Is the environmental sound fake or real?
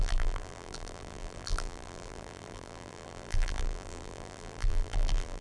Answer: fake